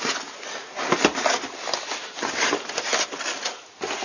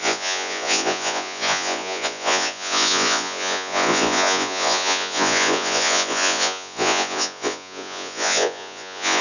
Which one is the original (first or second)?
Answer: first